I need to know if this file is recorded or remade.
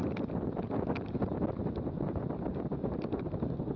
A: recorded